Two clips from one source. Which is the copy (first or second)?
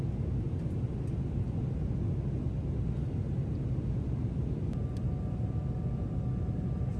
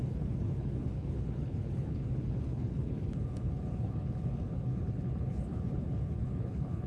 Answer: second